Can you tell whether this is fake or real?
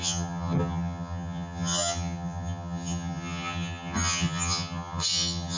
fake